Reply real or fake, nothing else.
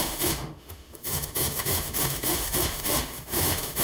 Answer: fake